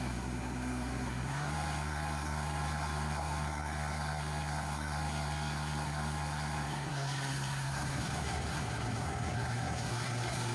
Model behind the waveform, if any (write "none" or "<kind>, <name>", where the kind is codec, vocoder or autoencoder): codec, SNAC